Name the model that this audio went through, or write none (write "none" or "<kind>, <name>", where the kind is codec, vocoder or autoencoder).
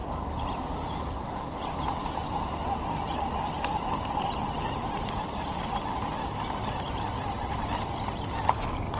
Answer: none